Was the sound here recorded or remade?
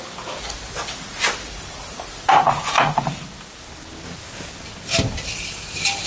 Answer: recorded